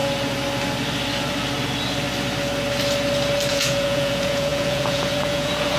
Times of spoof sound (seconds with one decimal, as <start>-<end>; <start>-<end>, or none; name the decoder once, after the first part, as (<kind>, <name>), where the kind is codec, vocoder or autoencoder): 3.5-5.8 (vocoder, Vocos)